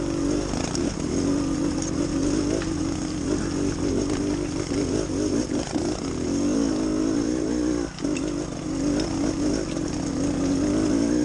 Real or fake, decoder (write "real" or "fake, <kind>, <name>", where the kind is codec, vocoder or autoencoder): real